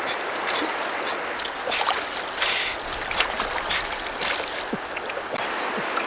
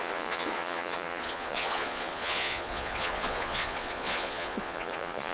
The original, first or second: first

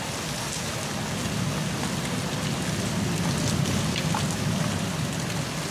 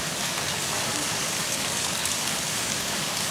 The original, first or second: first